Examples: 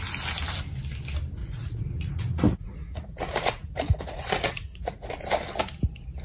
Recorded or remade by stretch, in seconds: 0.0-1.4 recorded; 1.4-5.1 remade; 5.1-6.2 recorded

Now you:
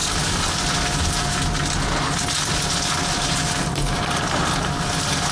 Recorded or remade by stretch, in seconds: 0.0-5.3 recorded

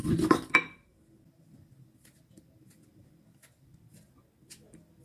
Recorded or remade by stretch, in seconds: 0.0-5.0 recorded

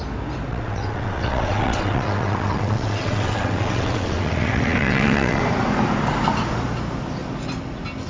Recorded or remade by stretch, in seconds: 0.0-0.5 recorded; 0.5-5.4 remade; 5.4-8.1 recorded

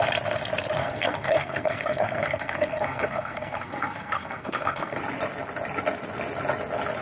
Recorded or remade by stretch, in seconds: 0.0-0.8 recorded; 0.8-5.0 remade; 5.0-7.0 recorded

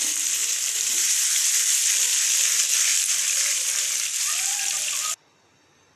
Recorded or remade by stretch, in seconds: 0.0-0.4 recorded; 0.4-1.2 remade; 1.2-2.9 recorded; 2.9-6.0 remade